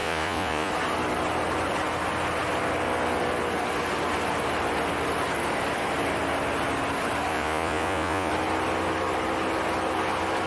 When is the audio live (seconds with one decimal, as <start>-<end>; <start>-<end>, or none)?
0.7-7.3; 8.3-10.5

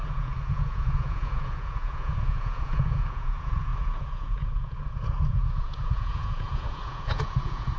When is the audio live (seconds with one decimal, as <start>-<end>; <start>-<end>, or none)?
none

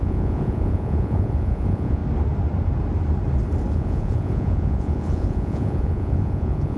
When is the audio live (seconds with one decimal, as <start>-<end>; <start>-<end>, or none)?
2.0-3.7

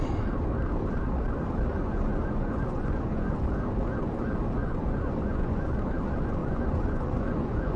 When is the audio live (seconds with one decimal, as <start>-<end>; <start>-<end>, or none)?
0.0-1.7; 3.4-4.6; 5.7-6.4

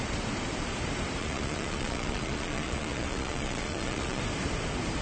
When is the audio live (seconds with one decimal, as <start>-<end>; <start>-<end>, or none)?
0.0-1.2; 4.2-5.0

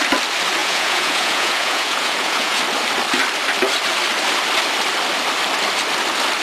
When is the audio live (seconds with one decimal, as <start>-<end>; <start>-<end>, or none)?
0.0-0.6; 2.6-6.4

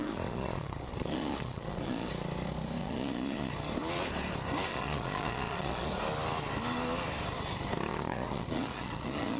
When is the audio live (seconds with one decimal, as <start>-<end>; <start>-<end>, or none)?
2.1-2.8; 3.5-4.7; 5.9-7.9

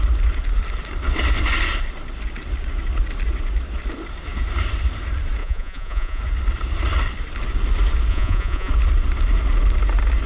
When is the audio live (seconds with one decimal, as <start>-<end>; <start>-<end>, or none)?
0.0-5.4; 6.2-8.1; 8.7-10.3